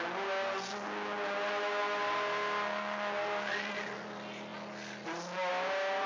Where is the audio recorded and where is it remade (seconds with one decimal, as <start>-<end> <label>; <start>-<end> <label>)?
0.0-6.1 recorded